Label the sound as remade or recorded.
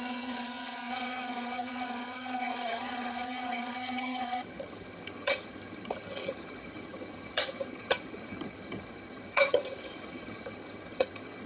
remade